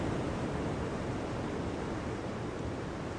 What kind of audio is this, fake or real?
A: fake